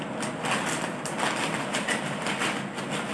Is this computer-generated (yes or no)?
no